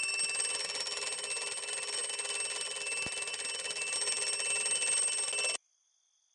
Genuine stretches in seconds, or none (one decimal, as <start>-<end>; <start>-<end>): 0.0-6.3